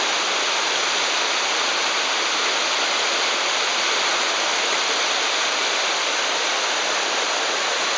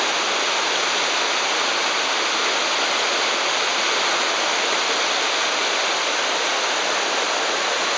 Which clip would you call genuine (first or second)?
second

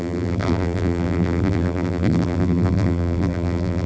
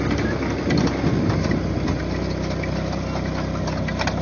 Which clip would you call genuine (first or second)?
second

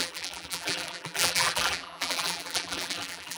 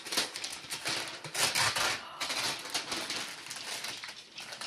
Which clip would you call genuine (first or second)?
second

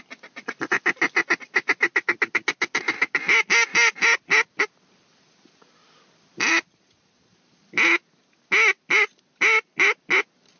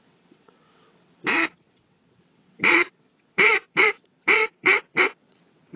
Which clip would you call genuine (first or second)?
first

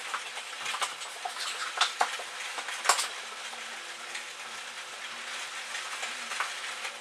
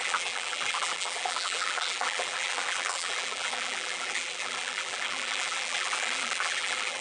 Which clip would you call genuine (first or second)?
first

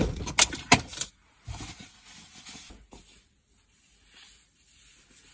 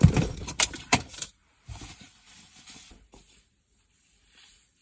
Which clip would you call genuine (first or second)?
first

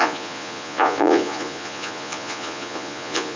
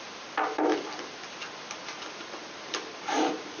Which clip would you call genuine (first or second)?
second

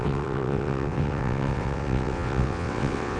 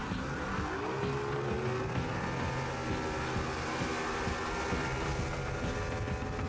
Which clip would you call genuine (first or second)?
second